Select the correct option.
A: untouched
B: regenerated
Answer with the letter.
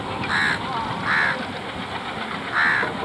A